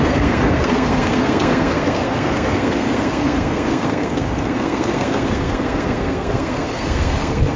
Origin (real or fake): fake